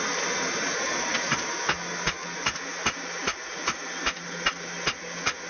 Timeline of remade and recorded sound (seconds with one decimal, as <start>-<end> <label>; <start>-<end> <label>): 0.0-5.5 recorded